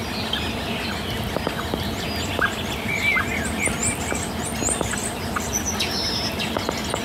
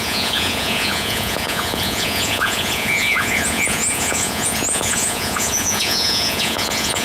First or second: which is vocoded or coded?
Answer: second